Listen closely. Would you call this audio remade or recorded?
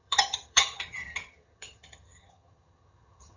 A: remade